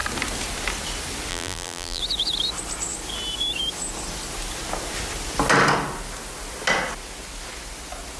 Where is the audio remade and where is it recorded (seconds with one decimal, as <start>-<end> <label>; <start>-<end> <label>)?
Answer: 0.0-1.3 recorded; 1.3-2.0 remade; 2.0-8.2 recorded